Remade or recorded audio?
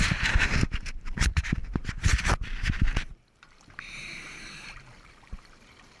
remade